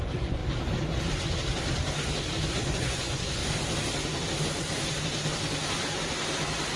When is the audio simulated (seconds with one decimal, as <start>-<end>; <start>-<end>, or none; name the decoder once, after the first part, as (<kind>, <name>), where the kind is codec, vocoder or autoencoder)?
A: 0.0-0.4 (vocoder, Vocos); 2.5-3.4